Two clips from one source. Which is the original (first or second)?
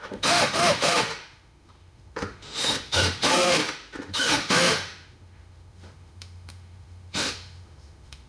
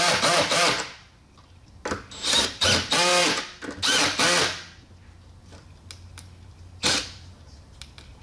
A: second